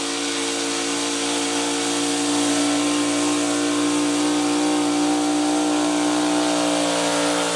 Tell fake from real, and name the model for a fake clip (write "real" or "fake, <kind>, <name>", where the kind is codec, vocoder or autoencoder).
real